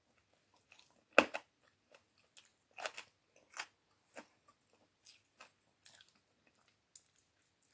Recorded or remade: recorded